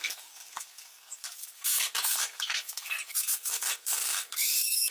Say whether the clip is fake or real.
fake